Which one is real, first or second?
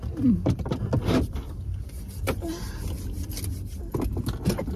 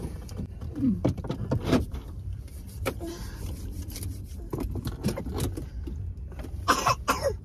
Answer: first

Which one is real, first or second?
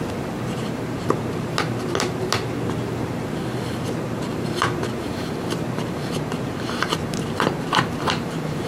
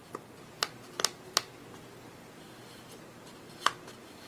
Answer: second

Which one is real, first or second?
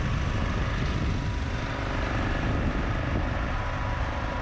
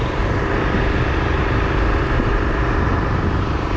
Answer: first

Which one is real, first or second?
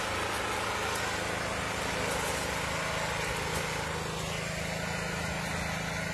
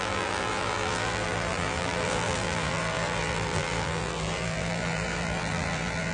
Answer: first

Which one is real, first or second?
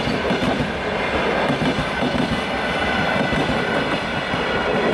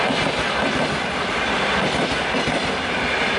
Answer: first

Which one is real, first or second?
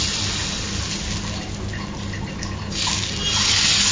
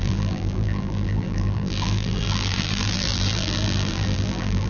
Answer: first